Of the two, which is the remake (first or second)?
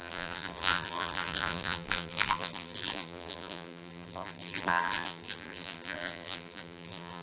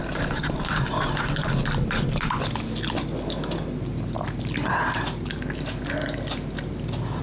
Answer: first